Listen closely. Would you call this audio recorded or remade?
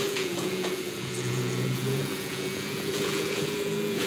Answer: remade